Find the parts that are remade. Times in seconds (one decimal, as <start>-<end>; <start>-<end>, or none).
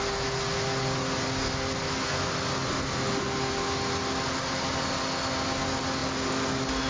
none